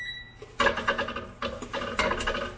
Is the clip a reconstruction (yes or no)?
no